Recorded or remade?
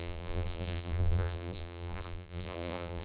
remade